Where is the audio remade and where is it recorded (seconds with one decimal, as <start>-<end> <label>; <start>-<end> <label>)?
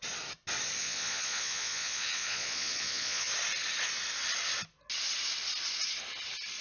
0.0-0.8 recorded; 0.8-3.3 remade; 3.3-6.6 recorded